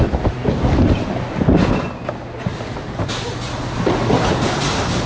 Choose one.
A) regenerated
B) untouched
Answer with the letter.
B